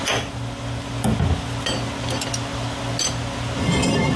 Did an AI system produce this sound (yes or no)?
no